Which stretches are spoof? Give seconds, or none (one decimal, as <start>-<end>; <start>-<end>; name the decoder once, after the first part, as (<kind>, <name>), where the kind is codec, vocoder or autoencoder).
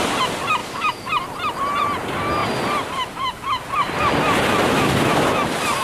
0.6-1.1 (autoencoder, DAC-VAE)